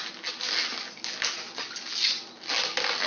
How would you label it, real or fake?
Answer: real